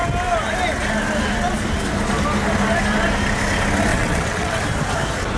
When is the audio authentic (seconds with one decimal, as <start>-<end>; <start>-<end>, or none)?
0.0-3.9; 4.6-5.4